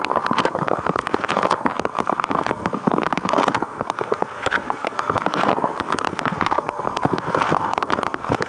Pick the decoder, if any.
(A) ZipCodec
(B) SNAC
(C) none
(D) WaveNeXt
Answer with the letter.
B